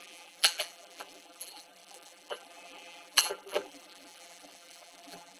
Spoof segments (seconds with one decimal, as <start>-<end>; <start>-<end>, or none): 0.0-5.4